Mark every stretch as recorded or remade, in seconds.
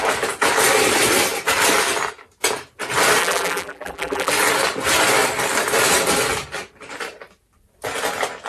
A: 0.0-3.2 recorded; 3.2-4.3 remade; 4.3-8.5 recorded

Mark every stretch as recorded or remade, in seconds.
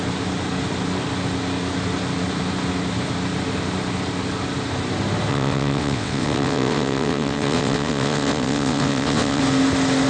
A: 0.0-5.3 recorded; 5.3-9.4 remade; 9.4-10.1 recorded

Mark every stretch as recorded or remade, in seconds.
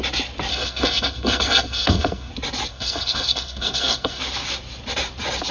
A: 0.0-0.5 recorded; 0.5-2.3 remade; 2.3-2.7 recorded; 2.7-4.2 remade; 4.2-5.5 recorded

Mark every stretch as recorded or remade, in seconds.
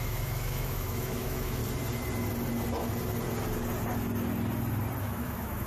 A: 0.0-1.6 remade; 1.6-5.0 recorded; 5.0-5.7 remade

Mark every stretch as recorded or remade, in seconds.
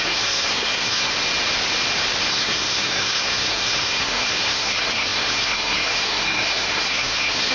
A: 0.0-1.1 remade; 1.1-2.3 recorded; 2.3-7.5 remade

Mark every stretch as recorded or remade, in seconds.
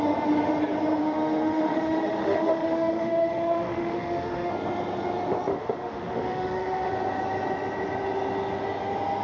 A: 0.0-1.0 recorded; 1.0-4.5 remade; 4.5-5.5 recorded; 5.5-6.9 remade; 6.9-9.2 recorded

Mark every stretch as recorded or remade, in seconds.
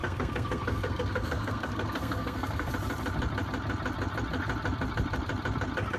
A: 0.0-2.7 remade; 2.7-6.0 recorded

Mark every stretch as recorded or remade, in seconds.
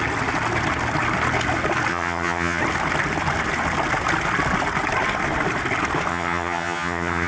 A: 0.0-1.9 recorded; 1.9-2.6 remade; 2.6-6.1 recorded; 6.1-7.3 remade